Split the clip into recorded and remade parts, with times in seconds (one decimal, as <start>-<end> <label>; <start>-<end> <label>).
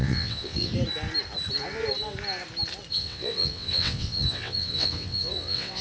0.0-0.7 remade; 0.7-2.9 recorded; 2.9-5.8 remade